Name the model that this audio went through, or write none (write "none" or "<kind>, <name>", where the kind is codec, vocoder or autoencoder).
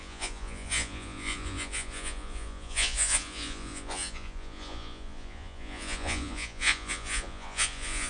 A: vocoder, Vocos